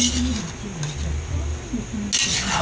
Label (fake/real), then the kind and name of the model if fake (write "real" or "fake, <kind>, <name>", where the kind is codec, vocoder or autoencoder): real